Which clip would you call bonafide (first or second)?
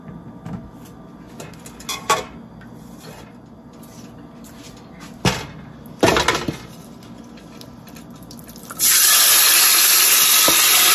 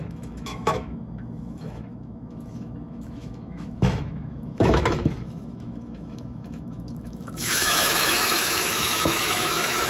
first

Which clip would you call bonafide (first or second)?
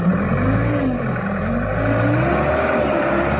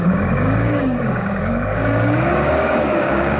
first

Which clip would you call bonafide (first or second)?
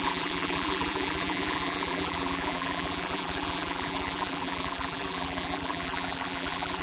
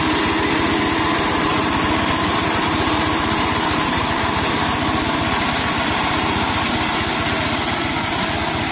second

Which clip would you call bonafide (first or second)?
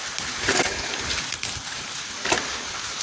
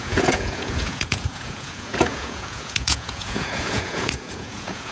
first